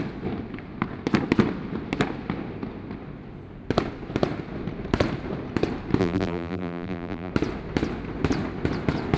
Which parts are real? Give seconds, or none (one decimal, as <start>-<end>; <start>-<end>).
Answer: 0.0-6.0; 7.3-9.2